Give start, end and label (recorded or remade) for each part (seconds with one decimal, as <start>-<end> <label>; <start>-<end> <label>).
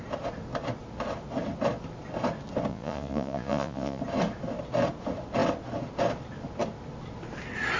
0.0-2.7 recorded; 2.7-4.0 remade; 4.0-7.8 recorded